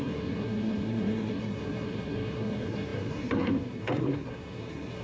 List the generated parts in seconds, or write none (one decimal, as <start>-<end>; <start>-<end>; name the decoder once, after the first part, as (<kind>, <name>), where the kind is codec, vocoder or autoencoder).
0.0-5.0 (codec, SNAC)